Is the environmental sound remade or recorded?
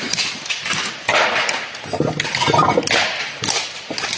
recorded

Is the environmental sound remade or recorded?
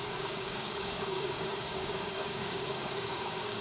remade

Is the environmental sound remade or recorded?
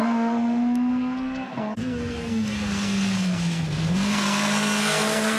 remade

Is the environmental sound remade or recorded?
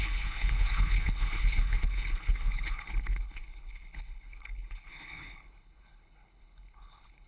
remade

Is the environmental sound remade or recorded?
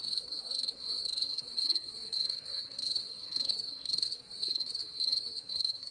remade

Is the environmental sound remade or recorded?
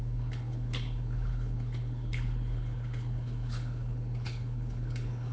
remade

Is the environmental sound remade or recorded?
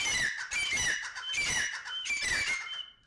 remade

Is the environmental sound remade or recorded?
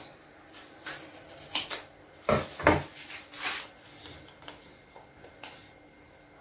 recorded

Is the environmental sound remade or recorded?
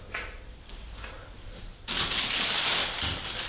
recorded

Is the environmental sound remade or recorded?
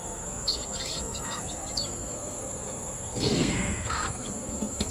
remade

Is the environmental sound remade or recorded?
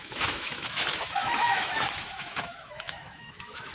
remade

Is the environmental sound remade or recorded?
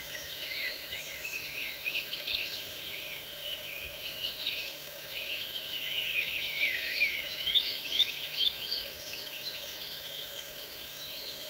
remade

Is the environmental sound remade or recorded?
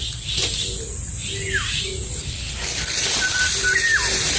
recorded